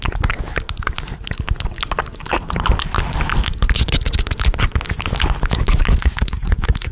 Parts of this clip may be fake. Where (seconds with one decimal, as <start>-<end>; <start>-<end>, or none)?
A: 6.0-6.9